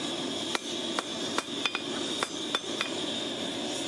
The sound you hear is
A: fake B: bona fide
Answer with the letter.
B